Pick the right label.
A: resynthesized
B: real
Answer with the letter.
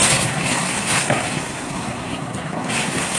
A